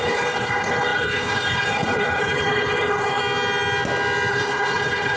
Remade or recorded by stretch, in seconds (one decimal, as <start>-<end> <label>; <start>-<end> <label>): 0.0-3.2 remade; 3.2-4.3 recorded; 4.3-5.2 remade